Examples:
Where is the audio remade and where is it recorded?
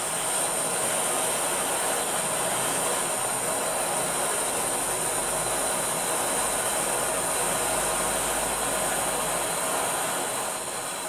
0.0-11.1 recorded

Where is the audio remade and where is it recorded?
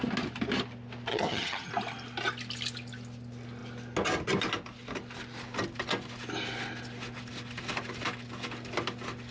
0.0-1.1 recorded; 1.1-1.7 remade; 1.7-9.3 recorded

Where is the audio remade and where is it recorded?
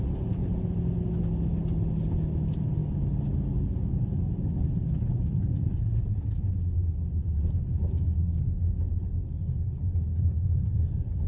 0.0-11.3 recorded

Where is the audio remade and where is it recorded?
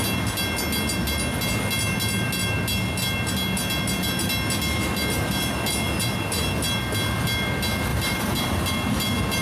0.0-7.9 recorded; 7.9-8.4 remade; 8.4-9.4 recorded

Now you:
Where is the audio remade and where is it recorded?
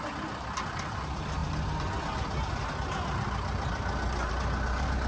0.0-5.1 recorded